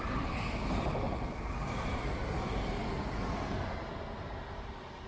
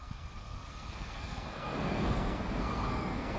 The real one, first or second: first